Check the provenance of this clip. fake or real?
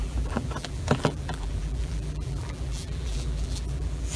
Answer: fake